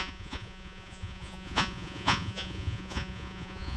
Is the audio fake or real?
fake